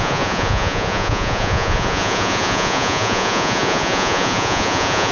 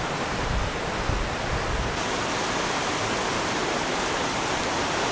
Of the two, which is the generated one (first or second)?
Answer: first